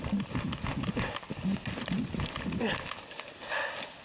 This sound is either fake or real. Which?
real